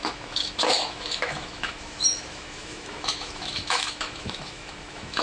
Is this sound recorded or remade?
remade